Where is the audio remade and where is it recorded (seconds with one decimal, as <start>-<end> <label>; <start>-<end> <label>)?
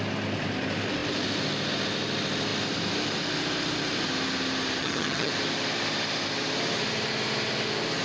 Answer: 0.0-4.8 recorded; 4.8-5.3 remade; 5.3-8.0 recorded